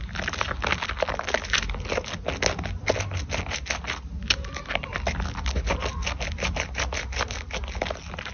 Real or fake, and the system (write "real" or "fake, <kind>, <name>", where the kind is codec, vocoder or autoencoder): real